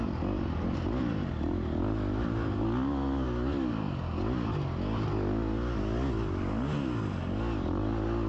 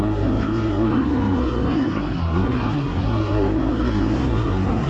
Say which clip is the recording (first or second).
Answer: first